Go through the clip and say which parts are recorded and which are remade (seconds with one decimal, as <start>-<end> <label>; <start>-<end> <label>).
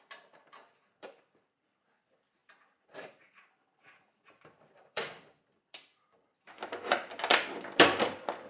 0.0-8.5 remade